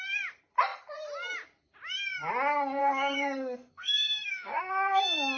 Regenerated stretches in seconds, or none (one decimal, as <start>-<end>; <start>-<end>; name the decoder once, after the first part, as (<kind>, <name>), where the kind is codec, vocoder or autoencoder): 2.8-5.0 (codec, SNAC)